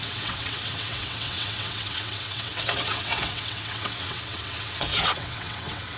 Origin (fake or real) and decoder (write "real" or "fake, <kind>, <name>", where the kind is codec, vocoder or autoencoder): fake, vocoder, WaveNeXt